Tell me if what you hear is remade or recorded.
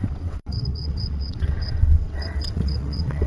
remade